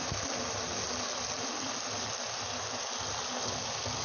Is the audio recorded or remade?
recorded